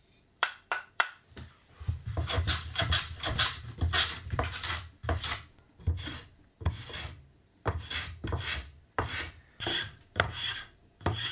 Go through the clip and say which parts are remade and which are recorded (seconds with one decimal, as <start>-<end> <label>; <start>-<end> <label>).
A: 0.0-11.3 remade